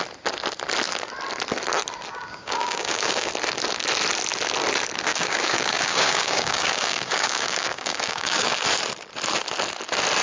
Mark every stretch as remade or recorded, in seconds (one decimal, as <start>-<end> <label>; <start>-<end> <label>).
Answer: 0.0-2.3 recorded; 2.3-3.3 remade; 3.3-5.1 recorded; 5.1-8.6 remade; 8.6-10.2 recorded